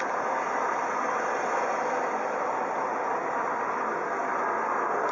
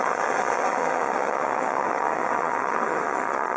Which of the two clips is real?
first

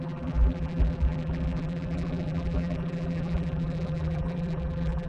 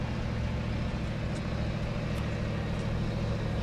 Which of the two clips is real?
second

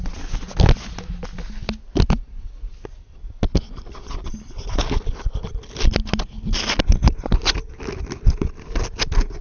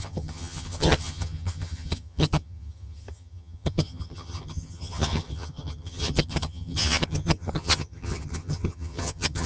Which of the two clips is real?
first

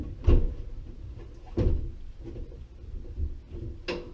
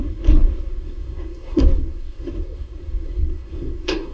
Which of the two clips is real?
first